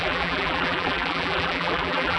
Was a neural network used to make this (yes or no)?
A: yes